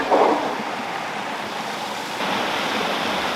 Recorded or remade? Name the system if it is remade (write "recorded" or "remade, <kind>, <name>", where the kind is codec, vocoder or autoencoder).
recorded